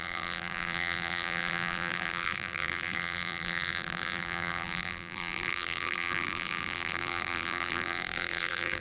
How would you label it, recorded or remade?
remade